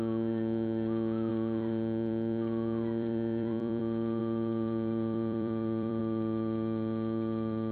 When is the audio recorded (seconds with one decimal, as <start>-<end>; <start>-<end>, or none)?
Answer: 0.0-1.3; 3.8-4.2; 6.0-7.7

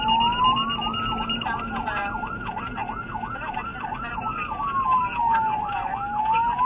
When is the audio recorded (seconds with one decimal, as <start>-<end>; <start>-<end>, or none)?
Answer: 0.0-6.7